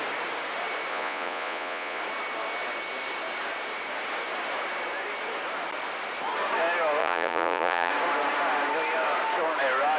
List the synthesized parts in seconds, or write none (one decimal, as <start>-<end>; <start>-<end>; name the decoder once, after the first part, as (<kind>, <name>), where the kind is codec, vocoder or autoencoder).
0.9-2.0 (vocoder, Vocos); 7.0-7.9